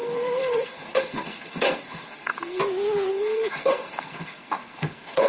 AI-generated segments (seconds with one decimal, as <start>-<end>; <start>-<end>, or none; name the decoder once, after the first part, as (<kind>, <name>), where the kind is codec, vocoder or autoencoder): 0.0-2.6 (codec, SNAC); 3.1-5.3